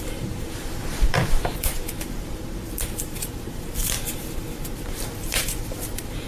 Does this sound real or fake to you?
fake